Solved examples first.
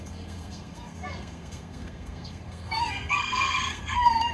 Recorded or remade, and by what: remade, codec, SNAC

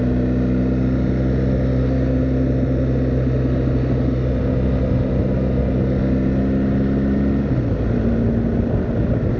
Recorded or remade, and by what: recorded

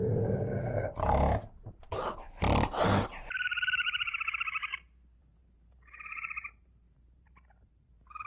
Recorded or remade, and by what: remade, vocoder, BigVGAN v2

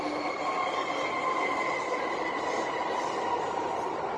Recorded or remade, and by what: recorded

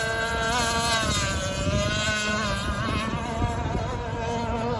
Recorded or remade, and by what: recorded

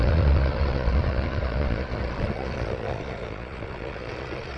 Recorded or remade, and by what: remade, vocoder, Vocos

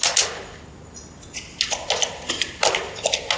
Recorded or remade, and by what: recorded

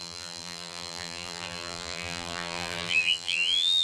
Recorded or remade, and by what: remade, vocoder, BigVGAN v2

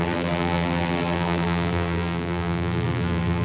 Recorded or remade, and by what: remade, vocoder, BigVGAN v2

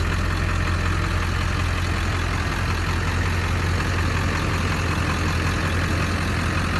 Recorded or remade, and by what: recorded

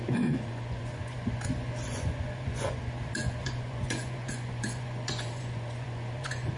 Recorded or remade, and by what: remade, vocoder, Vocos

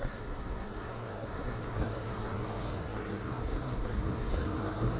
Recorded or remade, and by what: remade, codec, SNAC